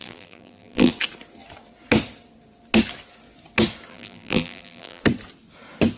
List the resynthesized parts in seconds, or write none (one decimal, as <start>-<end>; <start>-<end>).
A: 0.0-0.9; 3.9-5.0